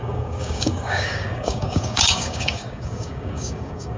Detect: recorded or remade remade